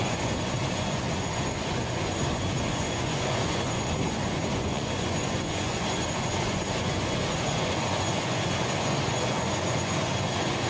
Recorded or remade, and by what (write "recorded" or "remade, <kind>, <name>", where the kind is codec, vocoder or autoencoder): remade, vocoder, Vocos